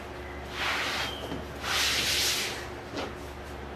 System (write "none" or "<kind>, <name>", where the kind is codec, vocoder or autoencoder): none